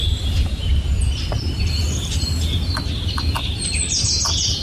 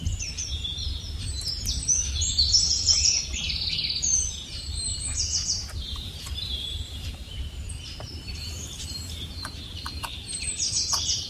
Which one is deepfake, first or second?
second